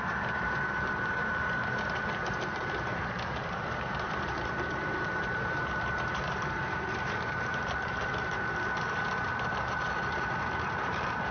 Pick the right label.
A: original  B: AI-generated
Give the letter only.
B